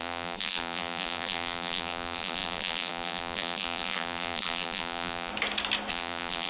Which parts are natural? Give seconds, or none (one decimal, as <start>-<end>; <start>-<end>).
5.3-5.9